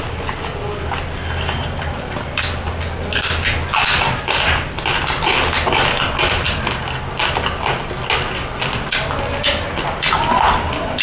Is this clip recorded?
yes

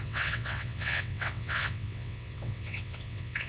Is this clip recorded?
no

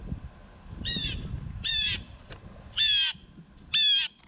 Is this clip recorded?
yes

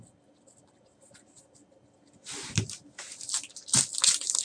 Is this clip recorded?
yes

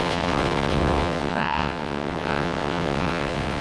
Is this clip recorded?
no